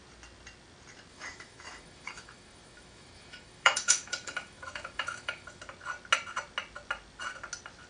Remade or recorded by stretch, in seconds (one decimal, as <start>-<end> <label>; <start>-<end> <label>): 0.0-1.1 recorded; 1.1-5.6 remade; 5.6-7.9 recorded